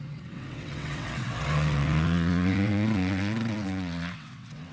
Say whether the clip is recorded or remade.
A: remade